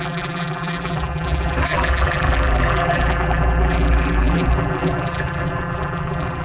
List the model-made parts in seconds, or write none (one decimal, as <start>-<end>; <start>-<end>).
0.0-6.4